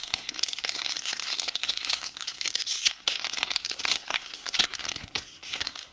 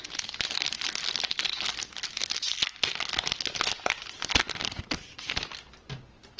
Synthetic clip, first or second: first